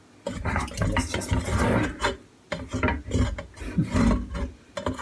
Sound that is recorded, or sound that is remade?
recorded